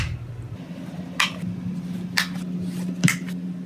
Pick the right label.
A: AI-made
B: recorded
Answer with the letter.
B